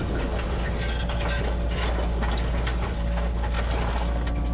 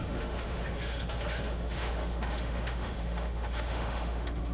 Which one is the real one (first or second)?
first